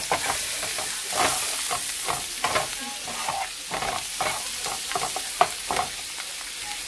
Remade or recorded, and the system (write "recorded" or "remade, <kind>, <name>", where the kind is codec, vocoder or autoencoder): recorded